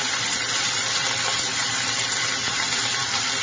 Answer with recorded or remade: remade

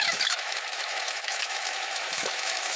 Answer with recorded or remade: remade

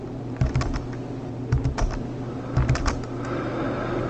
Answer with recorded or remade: recorded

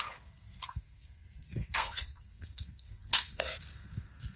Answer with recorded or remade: remade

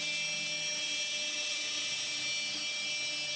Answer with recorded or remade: recorded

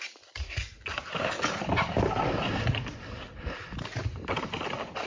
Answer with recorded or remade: recorded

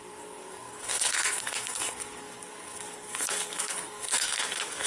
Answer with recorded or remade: remade